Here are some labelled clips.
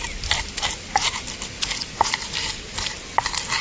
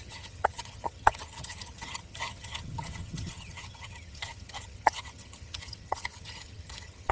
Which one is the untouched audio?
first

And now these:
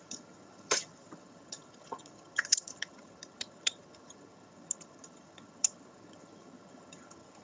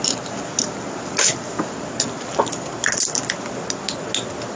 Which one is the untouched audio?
second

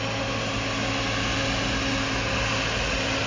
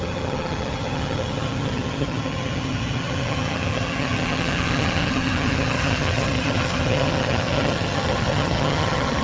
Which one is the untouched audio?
first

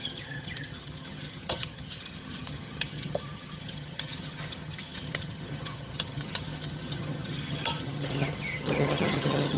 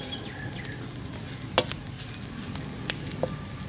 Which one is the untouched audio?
second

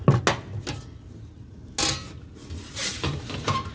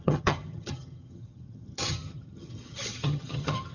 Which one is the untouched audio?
first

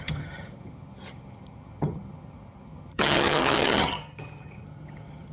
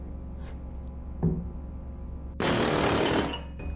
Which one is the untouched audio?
second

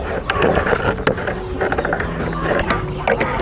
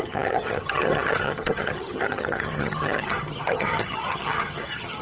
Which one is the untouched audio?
first